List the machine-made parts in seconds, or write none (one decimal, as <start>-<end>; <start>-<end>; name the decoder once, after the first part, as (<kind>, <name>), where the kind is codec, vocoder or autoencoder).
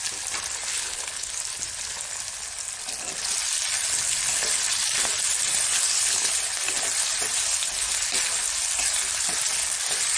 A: 0.7-1.3 (codec, HILCodec); 5.7-6.3